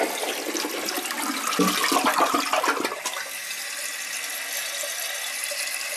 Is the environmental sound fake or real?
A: real